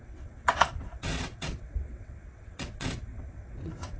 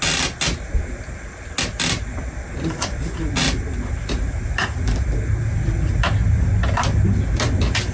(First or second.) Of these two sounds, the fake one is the first